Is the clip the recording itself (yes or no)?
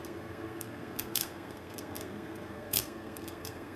no